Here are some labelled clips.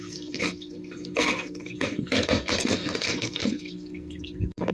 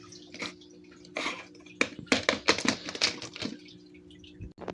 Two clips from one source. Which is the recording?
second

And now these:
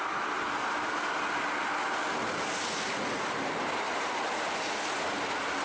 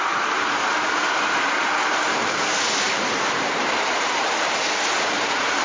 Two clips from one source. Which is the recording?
first